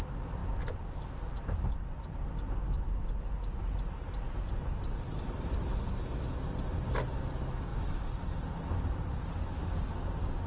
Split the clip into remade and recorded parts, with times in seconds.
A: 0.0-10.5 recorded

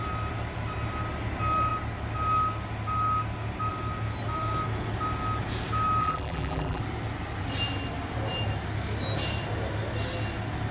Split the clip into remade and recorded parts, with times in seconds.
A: 0.0-6.0 recorded; 6.0-6.8 remade; 6.8-10.7 recorded

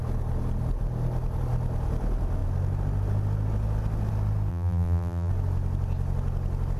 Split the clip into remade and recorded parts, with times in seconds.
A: 0.0-4.5 recorded; 4.5-5.3 remade; 5.3-6.8 recorded

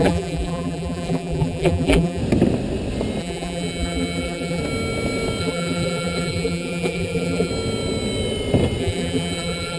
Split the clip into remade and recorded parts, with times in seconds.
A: 0.0-2.2 remade; 2.2-3.2 recorded; 3.2-4.6 remade; 4.6-5.4 recorded; 5.4-7.5 remade; 7.5-8.8 recorded; 8.8-9.8 remade